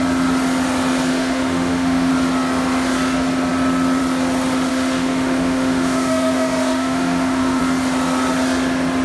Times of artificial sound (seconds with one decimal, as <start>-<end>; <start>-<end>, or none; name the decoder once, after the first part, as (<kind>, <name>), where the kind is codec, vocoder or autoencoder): 1.1-2.1 (autoencoder, DAC-VAE); 4.7-7.6

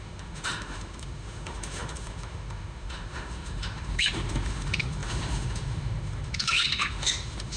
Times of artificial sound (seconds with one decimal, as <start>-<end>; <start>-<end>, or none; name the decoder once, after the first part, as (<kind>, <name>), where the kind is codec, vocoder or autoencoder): 0.0-7.6 (autoencoder, DAC-VAE)

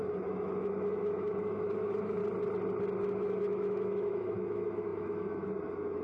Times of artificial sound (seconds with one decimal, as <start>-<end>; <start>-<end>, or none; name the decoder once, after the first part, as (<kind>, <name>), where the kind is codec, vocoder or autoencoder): 0.0-2.2 (autoencoder, DAC-VAE); 3.0-6.0

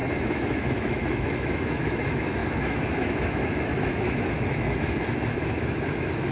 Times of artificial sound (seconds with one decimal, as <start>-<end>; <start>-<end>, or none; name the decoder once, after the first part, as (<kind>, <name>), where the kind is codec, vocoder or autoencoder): 0.0-6.3 (autoencoder, DAC-VAE)

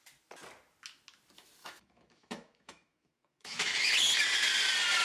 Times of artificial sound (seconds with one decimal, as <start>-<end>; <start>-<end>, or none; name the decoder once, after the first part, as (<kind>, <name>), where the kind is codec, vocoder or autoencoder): 1.6-3.9 (autoencoder, DAC-VAE)

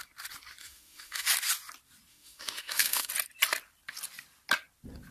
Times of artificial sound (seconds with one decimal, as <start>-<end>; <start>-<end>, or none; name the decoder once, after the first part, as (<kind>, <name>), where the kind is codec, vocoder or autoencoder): 0.6-1.3 (autoencoder, DAC-VAE); 2.1-3.1